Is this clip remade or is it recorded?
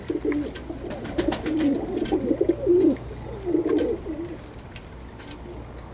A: recorded